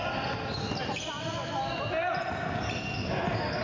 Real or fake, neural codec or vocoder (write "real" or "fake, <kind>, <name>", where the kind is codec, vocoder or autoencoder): real